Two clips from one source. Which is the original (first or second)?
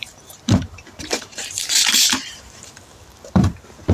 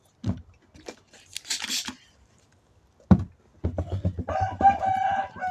second